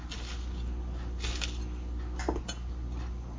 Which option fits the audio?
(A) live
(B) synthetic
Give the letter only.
A